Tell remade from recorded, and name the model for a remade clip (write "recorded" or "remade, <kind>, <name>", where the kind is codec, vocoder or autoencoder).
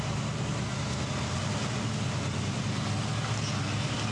recorded